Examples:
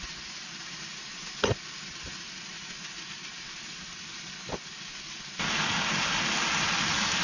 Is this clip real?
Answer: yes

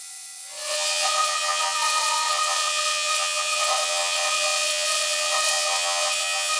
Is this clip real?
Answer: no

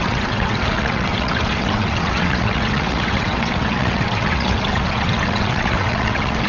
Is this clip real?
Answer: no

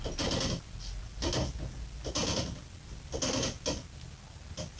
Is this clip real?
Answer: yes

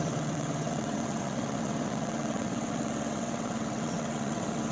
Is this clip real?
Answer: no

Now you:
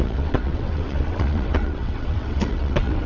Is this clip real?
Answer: no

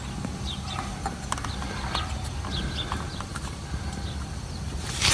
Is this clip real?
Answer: yes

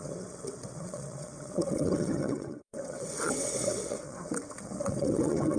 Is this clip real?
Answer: no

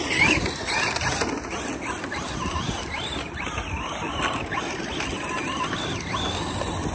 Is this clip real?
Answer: yes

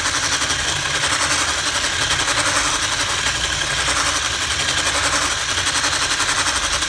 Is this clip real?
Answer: yes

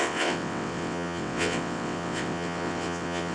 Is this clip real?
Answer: no